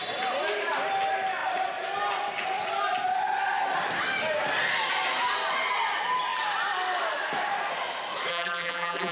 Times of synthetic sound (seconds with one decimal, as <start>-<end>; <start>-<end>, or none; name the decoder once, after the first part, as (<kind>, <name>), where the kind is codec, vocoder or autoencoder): 8.3-9.1 (vocoder, BigVGAN v2)